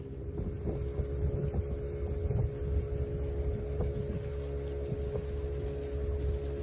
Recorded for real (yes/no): yes